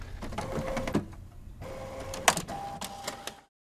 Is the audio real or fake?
real